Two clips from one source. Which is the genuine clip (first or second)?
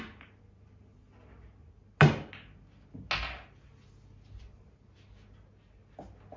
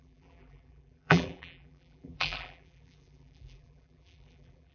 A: first